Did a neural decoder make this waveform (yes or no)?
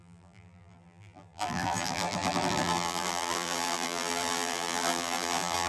yes